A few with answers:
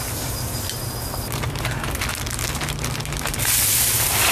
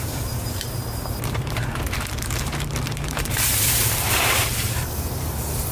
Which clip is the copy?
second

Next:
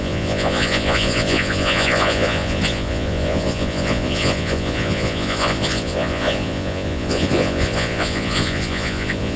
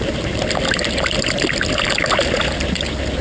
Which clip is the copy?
first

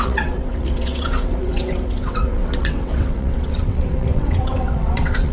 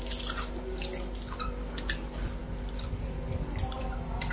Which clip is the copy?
first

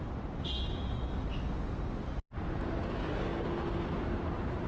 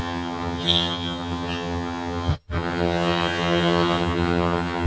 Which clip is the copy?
second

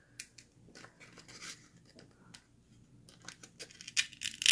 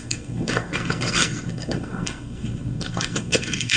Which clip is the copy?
second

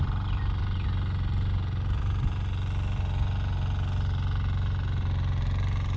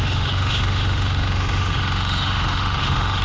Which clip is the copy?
second